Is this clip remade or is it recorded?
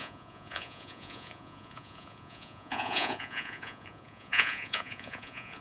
remade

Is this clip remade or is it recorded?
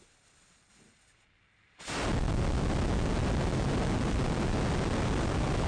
recorded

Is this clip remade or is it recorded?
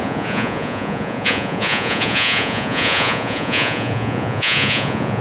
remade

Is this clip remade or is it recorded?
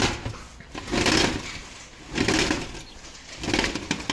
recorded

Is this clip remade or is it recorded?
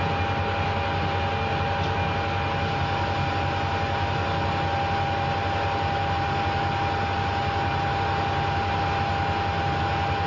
recorded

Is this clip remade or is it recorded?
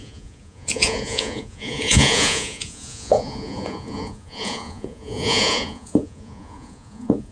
remade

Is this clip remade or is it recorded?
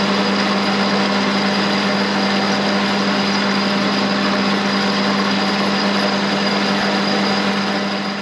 recorded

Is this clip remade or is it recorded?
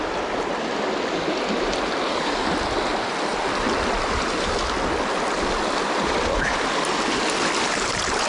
recorded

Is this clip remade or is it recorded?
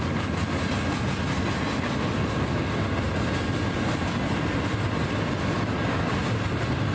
recorded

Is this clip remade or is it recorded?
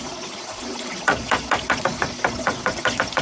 remade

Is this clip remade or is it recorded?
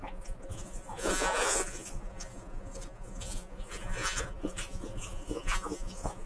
remade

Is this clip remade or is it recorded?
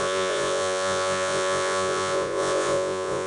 remade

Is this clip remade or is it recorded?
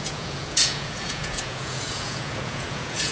remade